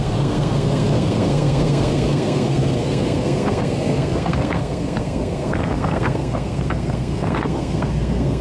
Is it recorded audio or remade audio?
remade